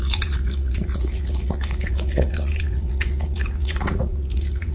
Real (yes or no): no